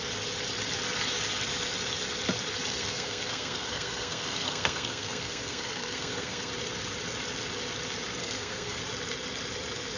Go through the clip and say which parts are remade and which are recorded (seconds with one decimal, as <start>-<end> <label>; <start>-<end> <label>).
0.0-2.8 recorded; 2.8-6.5 remade; 6.5-8.2 recorded; 8.2-8.8 remade; 8.8-10.0 recorded